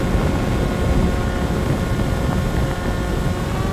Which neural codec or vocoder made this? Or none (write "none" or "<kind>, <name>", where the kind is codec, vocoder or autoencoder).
none